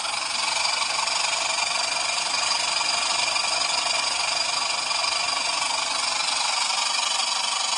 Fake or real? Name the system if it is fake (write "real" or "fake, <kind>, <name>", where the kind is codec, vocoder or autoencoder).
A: real